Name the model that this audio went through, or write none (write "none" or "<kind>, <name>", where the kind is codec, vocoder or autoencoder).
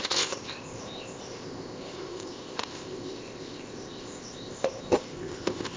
codec, ZipCodec